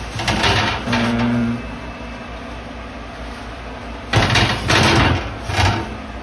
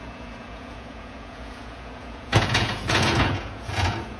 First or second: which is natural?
first